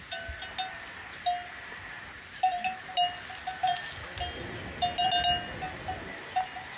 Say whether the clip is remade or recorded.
recorded